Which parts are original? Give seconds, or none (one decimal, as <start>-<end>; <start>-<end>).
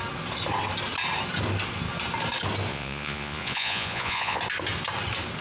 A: 0.0-2.7; 4.4-5.4